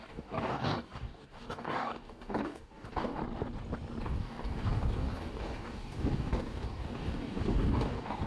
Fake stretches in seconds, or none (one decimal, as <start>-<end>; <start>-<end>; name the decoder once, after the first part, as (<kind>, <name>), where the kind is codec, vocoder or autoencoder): 0.0-3.2 (codec, DAC); 4.0-8.3